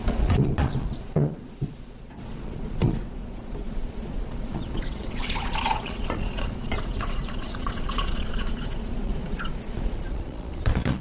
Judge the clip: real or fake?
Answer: fake